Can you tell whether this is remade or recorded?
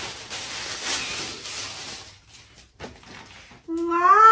recorded